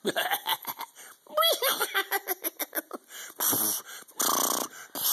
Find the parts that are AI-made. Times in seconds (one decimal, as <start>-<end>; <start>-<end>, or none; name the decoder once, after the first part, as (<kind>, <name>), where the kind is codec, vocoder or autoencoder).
0.0-2.0 (vocoder, BigVGAN v2)